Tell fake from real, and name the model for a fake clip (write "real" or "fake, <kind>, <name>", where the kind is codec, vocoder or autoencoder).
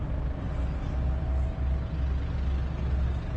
real